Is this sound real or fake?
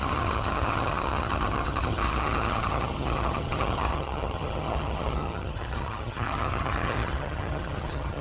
fake